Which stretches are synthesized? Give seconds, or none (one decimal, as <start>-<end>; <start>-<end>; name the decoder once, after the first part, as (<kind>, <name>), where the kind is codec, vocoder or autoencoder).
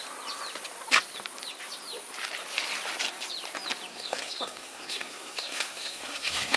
3.9-6.6 (codec, SNAC)